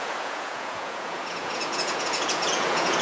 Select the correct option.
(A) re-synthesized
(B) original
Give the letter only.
A